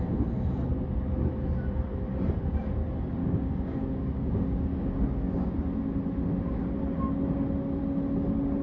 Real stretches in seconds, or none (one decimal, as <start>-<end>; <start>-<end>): 0.0-3.2; 5.5-8.6